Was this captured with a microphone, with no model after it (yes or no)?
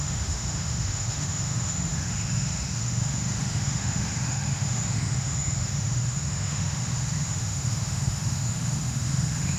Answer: no